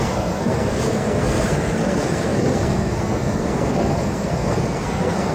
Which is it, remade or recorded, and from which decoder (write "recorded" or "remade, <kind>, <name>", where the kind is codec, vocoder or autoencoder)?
remade, codec, SNAC